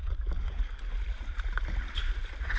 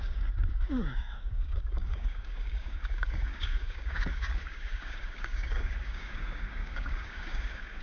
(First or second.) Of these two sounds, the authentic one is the first